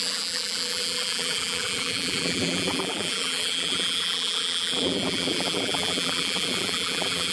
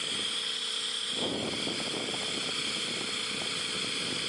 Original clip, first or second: second